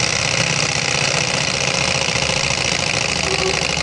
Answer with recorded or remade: recorded